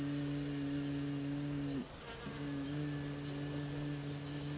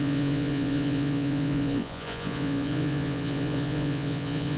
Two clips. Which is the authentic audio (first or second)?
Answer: first